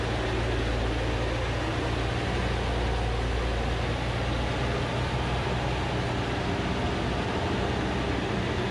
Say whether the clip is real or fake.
real